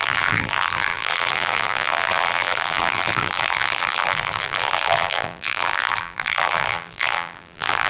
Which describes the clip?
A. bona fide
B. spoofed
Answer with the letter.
B